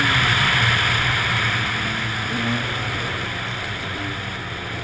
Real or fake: real